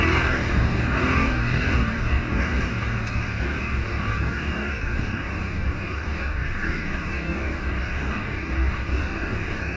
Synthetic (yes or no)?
yes